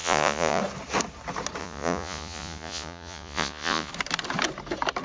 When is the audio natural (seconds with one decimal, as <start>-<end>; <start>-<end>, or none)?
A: 0.6-1.6; 3.9-5.0